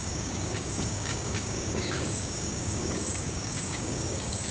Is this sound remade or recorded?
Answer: remade